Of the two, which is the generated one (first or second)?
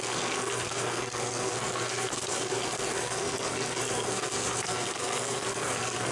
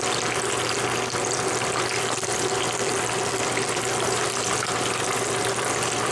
first